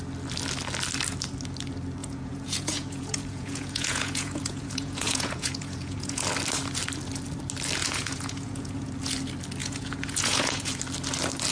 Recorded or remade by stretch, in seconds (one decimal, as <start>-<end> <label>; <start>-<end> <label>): 0.0-2.0 recorded; 2.0-6.2 remade; 6.2-7.8 recorded; 7.8-8.9 remade; 8.9-9.6 recorded; 9.6-10.7 remade; 10.7-11.5 recorded